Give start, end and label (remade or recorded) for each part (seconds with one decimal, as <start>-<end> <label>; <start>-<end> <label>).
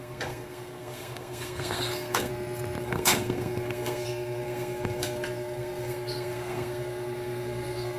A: 0.0-2.3 remade; 2.3-2.8 recorded; 2.8-8.0 remade